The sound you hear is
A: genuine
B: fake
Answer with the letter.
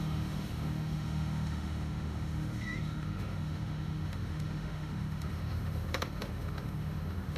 B